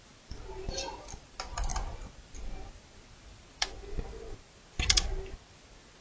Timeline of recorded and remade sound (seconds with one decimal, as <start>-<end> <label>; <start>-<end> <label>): 0.0-6.0 recorded